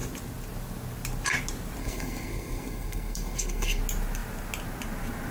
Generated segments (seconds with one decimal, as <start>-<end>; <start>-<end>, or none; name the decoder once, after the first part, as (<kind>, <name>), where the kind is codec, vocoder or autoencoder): 1.8-3.8 (codec, SNAC)